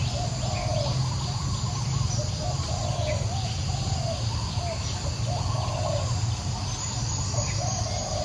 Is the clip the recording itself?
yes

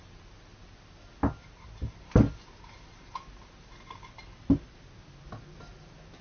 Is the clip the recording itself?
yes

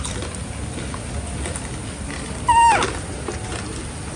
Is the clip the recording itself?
yes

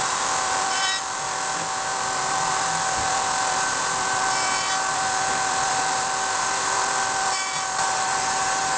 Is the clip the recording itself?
no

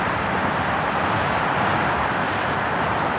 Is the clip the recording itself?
no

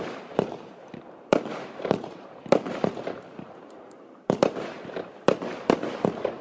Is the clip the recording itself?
no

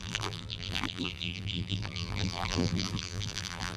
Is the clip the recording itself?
no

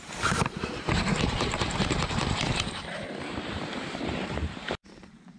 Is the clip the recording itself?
no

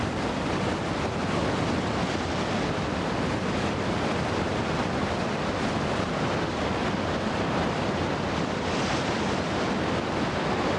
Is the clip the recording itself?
yes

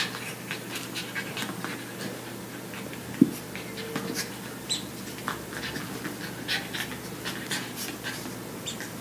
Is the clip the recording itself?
yes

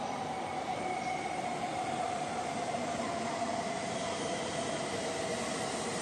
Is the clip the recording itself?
no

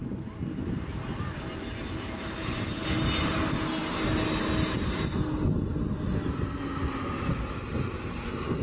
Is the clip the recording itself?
yes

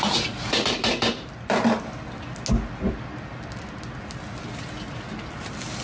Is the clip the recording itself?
yes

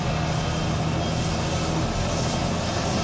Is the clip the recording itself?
yes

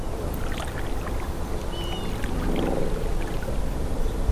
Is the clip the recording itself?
yes